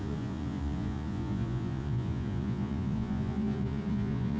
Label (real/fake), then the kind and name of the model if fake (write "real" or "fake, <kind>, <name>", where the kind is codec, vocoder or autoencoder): fake, vocoder, Vocos